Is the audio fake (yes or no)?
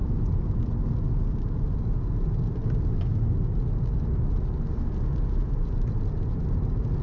no